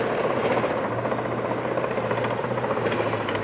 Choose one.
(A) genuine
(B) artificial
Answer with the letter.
A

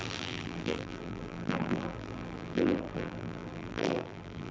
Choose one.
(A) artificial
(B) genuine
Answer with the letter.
A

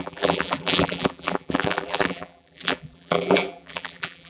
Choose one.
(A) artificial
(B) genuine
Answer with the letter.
A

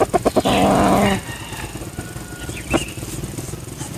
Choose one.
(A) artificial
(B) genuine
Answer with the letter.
B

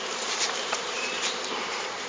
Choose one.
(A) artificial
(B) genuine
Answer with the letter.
A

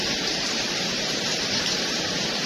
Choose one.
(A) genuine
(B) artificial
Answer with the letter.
B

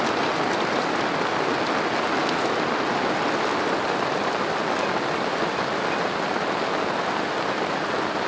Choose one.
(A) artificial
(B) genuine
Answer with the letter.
B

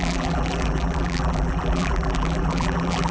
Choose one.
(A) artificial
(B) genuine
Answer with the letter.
A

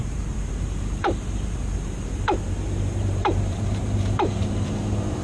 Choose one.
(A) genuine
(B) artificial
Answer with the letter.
B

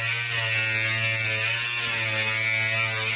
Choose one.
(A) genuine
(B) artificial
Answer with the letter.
A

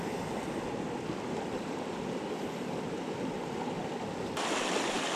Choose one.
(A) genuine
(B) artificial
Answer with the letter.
A